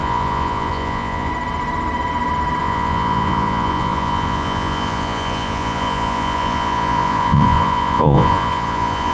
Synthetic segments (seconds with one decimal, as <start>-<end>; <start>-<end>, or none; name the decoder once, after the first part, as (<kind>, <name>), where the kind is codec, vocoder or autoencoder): 0.0-1.3 (vocoder, Vocos); 2.6-9.1